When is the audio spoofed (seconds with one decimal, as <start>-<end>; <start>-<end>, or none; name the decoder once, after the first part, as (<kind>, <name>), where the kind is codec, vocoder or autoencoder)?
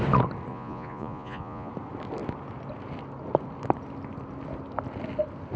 0.5-1.7 (vocoder, Vocos)